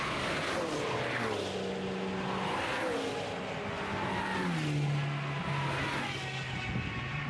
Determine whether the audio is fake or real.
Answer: real